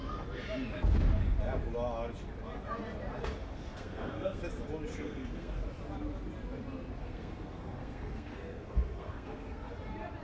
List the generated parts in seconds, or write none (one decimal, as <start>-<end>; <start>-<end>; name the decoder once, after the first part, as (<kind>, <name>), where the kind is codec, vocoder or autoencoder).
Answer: 3.4-4.4 (codec, SNAC); 4.9-5.5; 7.0-9.7